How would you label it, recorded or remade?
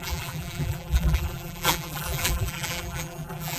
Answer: remade